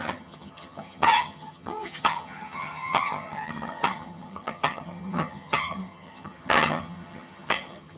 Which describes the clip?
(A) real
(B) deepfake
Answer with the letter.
B